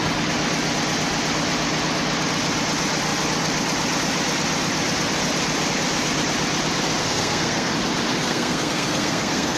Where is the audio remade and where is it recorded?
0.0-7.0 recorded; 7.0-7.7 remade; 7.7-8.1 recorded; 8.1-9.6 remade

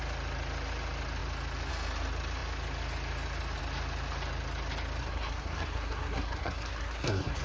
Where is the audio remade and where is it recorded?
0.0-5.0 recorded; 5.0-7.4 remade

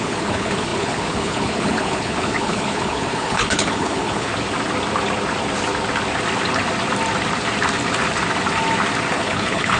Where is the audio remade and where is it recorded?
0.0-4.3 remade; 4.3-9.1 recorded; 9.1-9.8 remade

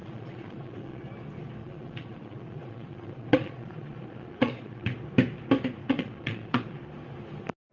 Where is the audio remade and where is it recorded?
0.0-1.0 remade; 1.0-1.6 recorded; 1.6-4.9 remade; 4.9-5.8 recorded; 5.8-6.8 remade; 6.8-7.7 recorded